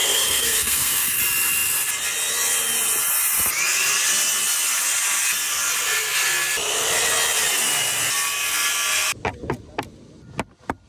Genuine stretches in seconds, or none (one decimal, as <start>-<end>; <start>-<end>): 1.2-10.9